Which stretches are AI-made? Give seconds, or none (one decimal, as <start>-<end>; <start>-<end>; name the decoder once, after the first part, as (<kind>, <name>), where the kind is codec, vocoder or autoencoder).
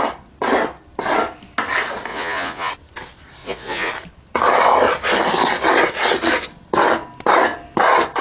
2.1-2.7 (vocoder, Vocos); 3.4-3.9